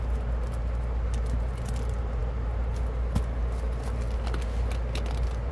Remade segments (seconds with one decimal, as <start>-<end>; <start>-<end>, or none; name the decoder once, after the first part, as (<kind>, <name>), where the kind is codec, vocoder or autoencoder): none